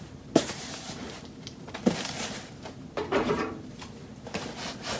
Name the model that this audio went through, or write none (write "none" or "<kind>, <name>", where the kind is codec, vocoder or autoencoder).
vocoder, BigVGAN v2